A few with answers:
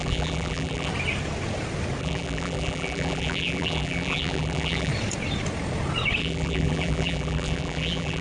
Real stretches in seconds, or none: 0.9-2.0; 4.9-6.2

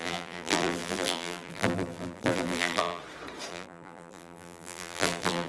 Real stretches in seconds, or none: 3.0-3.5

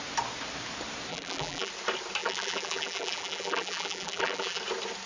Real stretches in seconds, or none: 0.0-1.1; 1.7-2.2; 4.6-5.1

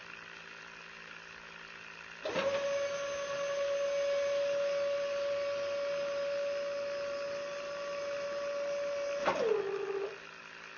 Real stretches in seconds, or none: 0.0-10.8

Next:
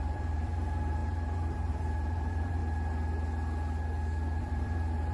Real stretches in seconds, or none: 2.6-4.4

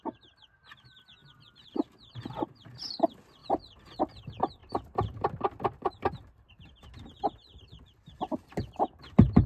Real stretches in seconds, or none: 0.0-4.6; 8.5-9.5

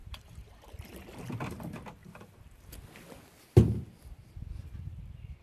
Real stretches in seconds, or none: 0.5-2.0; 2.6-5.4

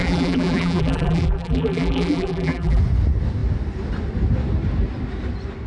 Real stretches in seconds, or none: 2.8-5.7